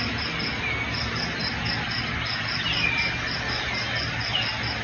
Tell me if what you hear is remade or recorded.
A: recorded